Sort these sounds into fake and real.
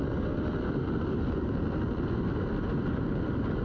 real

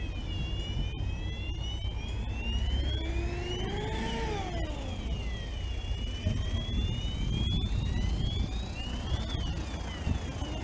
real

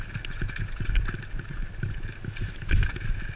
real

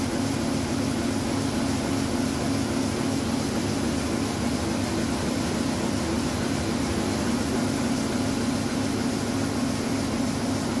real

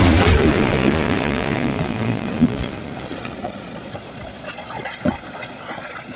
fake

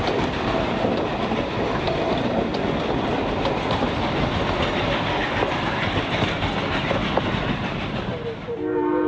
real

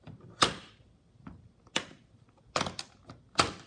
real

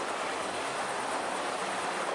real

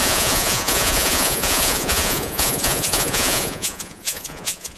fake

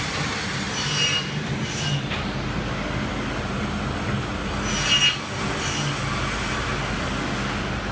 real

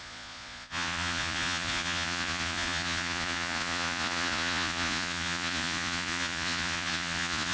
fake